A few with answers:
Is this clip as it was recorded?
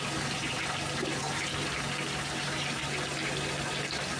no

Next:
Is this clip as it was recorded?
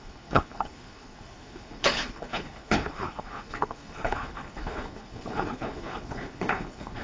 no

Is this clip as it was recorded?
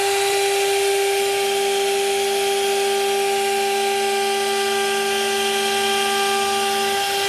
yes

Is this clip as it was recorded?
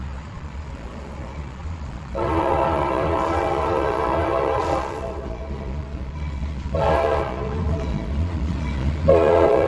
no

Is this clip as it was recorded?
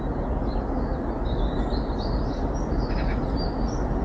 yes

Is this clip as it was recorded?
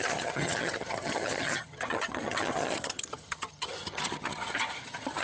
no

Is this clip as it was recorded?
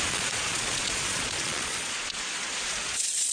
no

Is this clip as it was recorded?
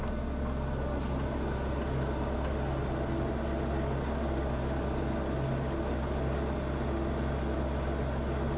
yes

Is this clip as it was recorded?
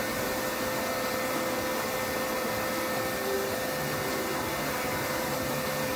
yes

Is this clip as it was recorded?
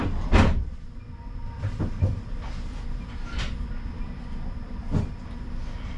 no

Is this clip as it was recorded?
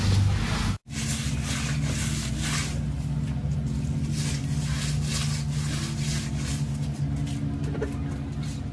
yes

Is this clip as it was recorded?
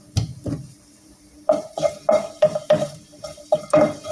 no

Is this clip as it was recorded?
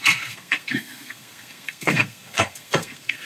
no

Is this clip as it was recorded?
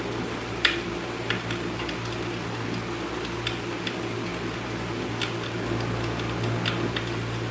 yes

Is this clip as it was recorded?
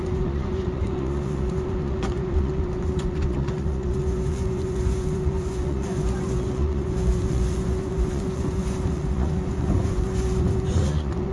no